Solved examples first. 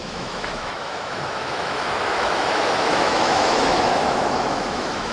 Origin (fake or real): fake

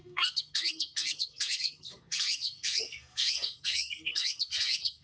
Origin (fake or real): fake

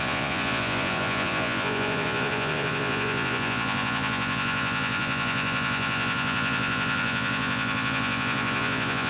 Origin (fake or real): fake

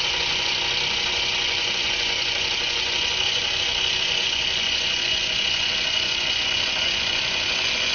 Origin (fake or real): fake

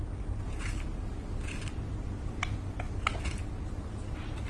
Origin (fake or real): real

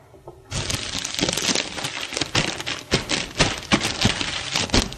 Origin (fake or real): real